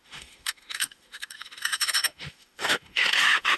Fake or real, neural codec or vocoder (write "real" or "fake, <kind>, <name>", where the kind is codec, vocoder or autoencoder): fake, autoencoder, DAC-VAE